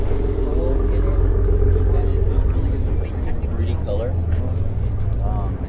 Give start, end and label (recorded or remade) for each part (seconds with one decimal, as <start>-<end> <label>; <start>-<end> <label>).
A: 0.0-5.7 recorded